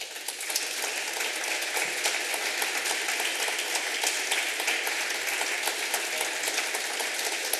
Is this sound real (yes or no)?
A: yes